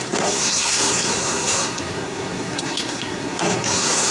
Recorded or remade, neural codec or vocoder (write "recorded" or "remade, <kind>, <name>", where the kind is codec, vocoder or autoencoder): remade, codec, SNAC